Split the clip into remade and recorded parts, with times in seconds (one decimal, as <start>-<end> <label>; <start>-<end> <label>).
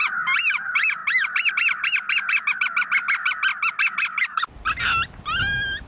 0.0-5.9 recorded